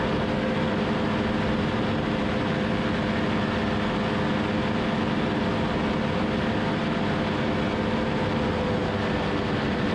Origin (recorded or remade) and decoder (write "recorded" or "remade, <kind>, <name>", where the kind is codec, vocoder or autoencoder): recorded